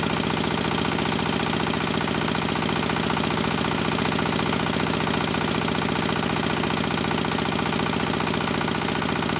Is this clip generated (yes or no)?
no